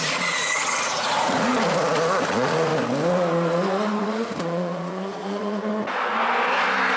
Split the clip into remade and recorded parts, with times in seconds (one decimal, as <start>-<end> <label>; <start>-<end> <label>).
0.0-1.5 remade; 1.5-2.3 recorded; 2.3-2.7 remade; 2.7-4.0 recorded; 4.0-5.7 remade; 5.7-7.0 recorded